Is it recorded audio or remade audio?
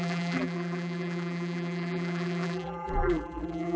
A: remade